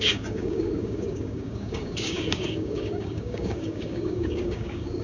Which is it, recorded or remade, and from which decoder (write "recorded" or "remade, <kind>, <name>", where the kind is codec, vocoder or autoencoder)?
remade, codec, DAC